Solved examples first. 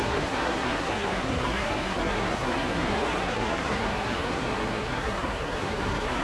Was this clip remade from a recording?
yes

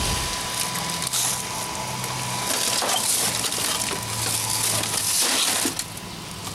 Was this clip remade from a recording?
no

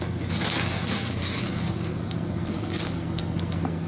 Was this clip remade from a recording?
yes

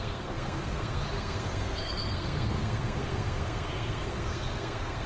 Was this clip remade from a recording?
yes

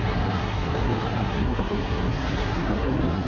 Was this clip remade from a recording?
yes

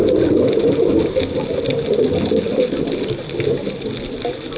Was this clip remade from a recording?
no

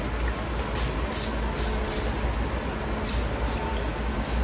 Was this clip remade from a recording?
no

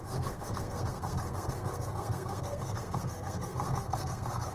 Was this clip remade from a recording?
yes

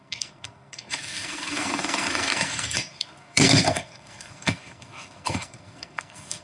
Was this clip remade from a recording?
yes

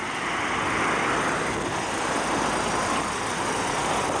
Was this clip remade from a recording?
no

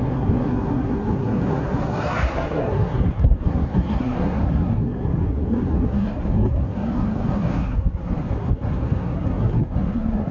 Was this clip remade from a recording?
yes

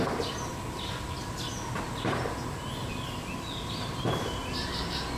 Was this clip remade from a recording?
no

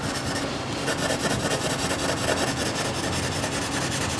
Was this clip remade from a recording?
no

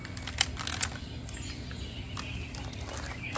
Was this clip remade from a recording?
no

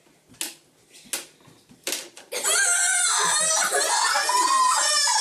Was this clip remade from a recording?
no